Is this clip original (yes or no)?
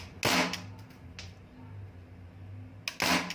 yes